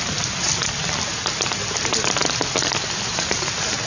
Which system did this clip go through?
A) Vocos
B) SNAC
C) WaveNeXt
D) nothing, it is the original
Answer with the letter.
D